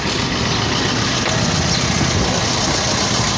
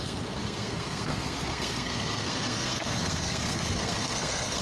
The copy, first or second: second